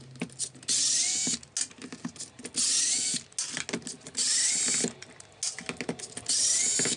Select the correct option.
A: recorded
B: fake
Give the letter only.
A